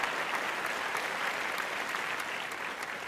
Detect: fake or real real